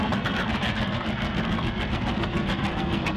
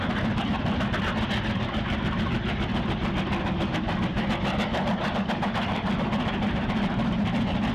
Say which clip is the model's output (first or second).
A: first